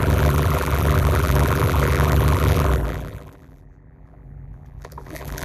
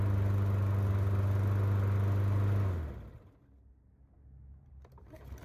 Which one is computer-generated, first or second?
first